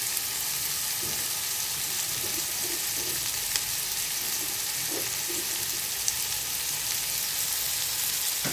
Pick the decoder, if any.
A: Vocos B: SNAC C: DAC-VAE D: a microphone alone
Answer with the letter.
D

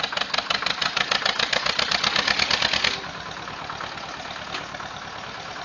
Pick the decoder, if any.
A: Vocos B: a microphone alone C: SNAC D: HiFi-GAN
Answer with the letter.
B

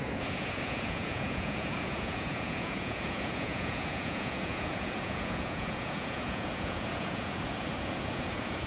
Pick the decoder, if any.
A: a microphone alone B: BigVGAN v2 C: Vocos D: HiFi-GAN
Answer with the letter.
C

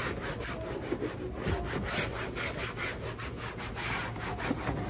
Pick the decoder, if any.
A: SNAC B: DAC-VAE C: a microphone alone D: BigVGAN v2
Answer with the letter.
C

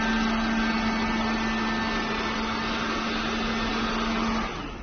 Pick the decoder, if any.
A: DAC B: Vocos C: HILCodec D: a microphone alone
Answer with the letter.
D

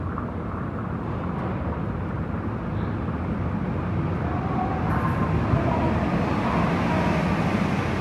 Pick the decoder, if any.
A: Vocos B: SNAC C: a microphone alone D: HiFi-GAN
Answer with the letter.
C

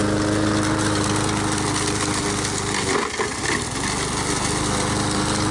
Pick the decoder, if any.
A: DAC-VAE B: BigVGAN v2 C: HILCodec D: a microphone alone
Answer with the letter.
D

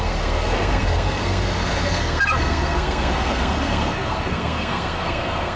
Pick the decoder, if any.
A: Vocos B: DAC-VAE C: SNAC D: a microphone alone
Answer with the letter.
C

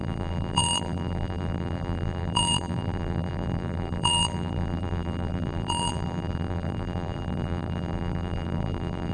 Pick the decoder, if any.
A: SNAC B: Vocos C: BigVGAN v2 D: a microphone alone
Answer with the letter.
C